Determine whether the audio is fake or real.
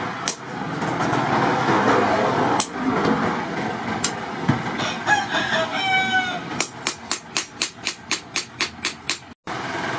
real